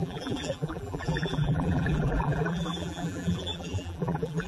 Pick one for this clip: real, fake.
fake